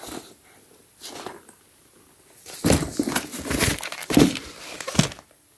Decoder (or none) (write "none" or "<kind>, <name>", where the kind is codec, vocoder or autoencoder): none